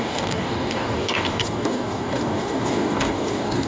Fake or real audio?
fake